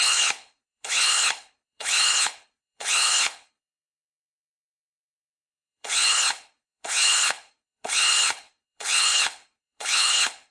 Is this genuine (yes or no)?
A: no